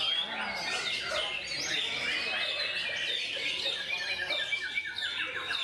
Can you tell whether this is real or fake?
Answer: real